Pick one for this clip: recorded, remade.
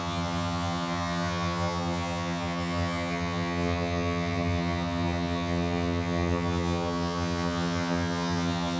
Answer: remade